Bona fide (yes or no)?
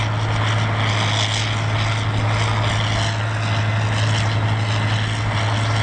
yes